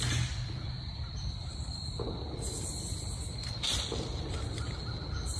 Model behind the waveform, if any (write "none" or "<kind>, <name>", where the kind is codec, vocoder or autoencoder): none